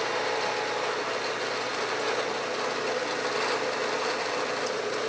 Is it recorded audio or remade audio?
recorded